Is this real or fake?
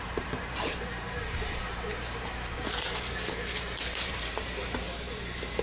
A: fake